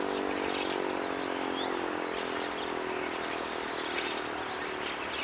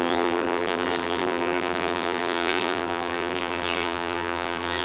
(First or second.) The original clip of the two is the first